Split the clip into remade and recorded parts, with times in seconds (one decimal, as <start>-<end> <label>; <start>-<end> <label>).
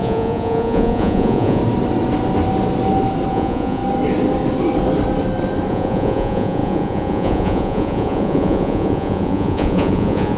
0.0-1.6 remade; 1.6-3.3 recorded; 3.3-3.8 remade; 3.8-5.7 recorded; 5.7-10.4 remade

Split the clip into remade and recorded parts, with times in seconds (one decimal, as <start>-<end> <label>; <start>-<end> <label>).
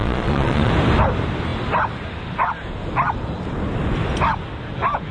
0.0-0.7 remade; 0.7-5.1 recorded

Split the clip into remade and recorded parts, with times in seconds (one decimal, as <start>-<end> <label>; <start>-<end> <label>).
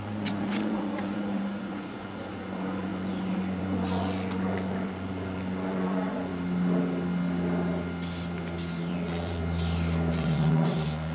0.0-6.3 remade; 6.3-8.9 recorded; 8.9-9.4 remade; 9.4-10.1 recorded; 10.1-11.1 remade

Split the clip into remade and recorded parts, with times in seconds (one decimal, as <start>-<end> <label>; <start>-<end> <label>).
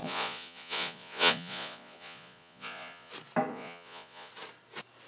0.0-3.1 remade; 3.1-3.5 recorded; 3.5-4.3 remade; 4.3-5.1 recorded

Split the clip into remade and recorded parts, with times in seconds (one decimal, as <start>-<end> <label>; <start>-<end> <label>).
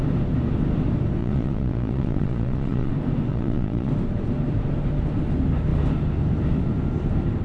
0.0-1.2 recorded; 1.2-2.9 remade; 2.9-3.3 recorded; 3.3-3.9 remade; 3.9-7.4 recorded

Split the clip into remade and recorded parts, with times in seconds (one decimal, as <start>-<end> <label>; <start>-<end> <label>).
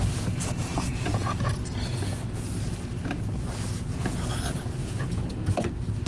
0.0-0.6 recorded; 0.6-1.5 remade; 1.5-1.9 recorded; 1.9-2.5 remade; 2.5-3.9 recorded; 3.9-5.6 remade; 5.6-6.1 recorded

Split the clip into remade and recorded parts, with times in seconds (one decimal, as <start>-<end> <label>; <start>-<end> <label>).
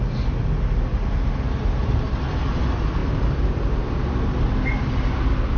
0.0-5.6 recorded